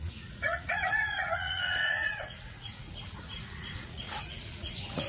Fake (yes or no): yes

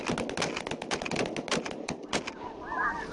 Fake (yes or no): no